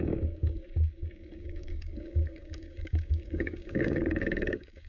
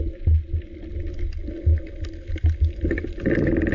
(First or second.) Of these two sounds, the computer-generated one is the first